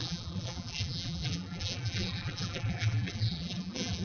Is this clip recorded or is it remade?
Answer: remade